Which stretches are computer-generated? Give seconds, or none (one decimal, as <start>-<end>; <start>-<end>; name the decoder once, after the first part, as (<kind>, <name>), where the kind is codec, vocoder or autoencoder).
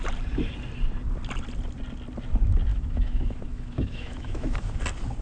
2.7-4.7 (autoencoder, DAC-VAE)